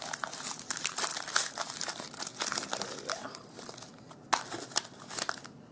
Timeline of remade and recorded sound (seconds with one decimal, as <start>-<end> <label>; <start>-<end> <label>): 0.0-5.7 recorded